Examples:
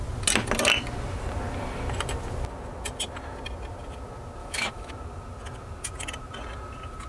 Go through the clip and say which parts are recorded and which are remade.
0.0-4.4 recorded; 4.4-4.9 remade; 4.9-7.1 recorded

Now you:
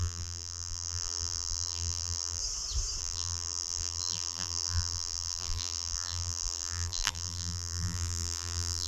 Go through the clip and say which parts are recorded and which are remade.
0.0-2.4 remade; 2.4-3.0 recorded; 3.0-8.9 remade